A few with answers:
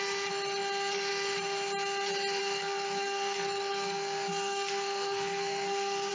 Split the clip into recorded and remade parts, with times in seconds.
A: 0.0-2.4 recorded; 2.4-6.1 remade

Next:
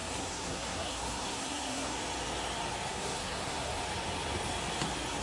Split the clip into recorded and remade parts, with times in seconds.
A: 0.0-2.0 remade; 2.0-2.9 recorded; 2.9-3.8 remade; 3.8-5.2 recorded

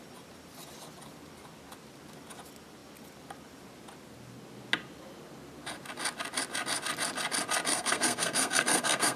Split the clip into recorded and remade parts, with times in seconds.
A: 0.0-7.7 recorded; 7.7-9.2 remade